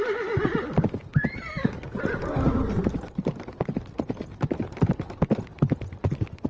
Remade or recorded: recorded